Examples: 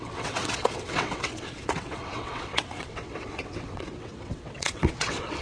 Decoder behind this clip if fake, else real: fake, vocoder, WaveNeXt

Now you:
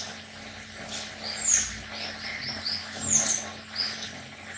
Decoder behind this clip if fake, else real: real